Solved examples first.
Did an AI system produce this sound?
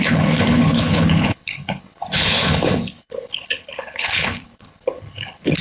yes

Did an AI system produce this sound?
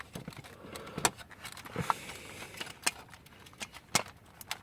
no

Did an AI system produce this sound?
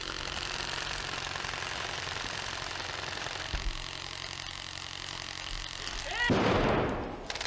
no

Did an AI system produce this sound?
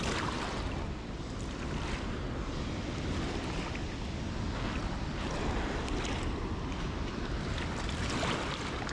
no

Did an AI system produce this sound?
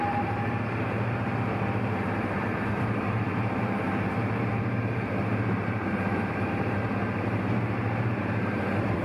yes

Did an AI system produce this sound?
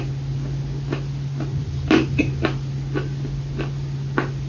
no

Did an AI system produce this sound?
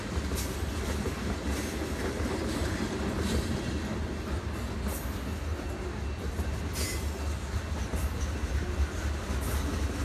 no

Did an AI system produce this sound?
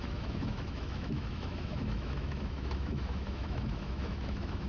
yes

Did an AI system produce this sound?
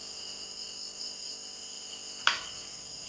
no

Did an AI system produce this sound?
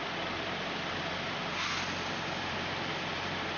yes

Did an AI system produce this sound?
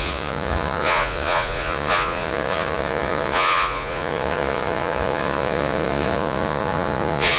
yes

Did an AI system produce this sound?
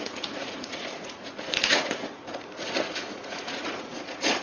yes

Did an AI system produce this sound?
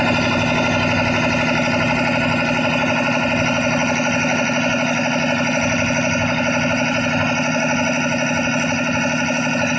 no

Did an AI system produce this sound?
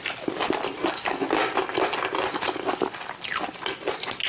no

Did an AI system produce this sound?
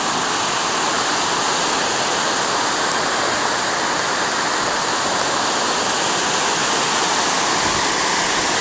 no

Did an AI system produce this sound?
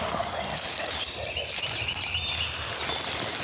no